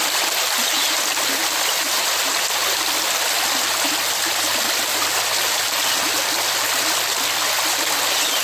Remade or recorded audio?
recorded